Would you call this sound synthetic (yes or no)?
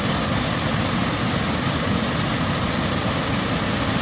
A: no